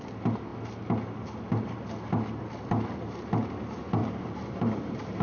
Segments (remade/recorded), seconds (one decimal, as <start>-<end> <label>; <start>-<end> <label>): 0.0-4.0 recorded; 4.0-5.2 remade